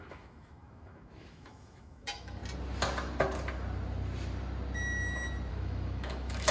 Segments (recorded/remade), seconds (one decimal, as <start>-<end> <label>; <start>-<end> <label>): 0.0-2.4 remade; 2.4-5.5 recorded; 5.5-6.5 remade